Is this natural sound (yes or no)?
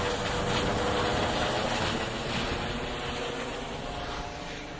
yes